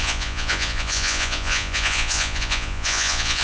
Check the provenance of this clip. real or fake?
fake